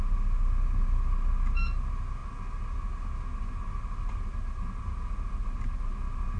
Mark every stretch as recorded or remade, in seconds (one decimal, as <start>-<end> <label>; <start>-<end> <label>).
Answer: 0.0-6.4 recorded